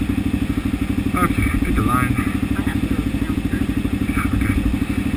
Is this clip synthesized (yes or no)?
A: no